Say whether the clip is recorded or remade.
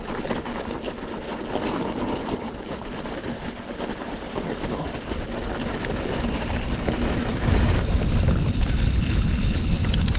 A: remade